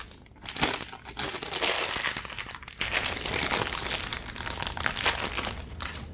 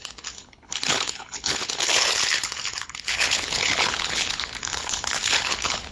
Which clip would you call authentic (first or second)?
first